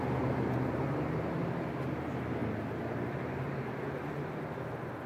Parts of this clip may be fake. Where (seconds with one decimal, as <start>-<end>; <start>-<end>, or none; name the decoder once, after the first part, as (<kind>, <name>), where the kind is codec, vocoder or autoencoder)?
none